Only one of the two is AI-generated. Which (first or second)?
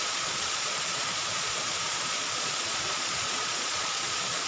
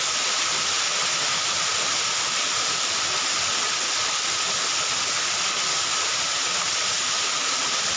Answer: first